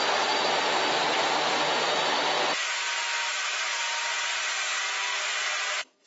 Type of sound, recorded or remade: recorded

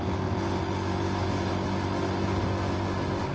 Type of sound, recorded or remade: recorded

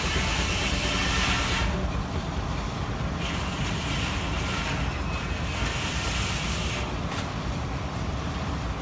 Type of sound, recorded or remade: recorded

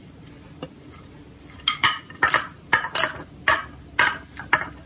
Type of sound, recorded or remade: recorded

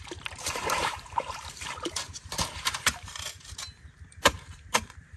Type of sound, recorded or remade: remade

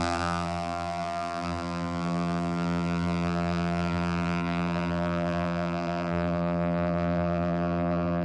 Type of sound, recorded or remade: remade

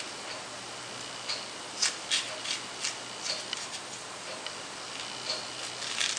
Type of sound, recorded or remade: recorded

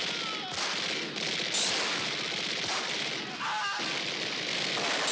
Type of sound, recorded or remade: recorded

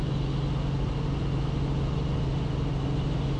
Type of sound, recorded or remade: recorded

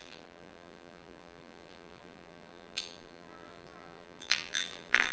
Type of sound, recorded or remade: remade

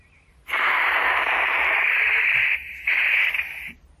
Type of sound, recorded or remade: remade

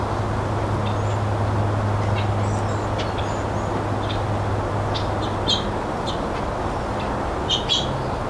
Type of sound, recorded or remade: recorded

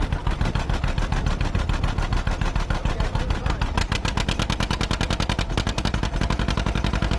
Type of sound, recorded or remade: recorded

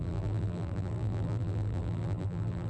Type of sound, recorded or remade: remade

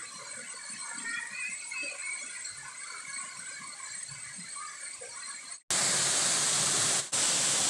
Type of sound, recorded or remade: recorded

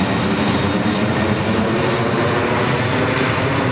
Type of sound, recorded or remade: recorded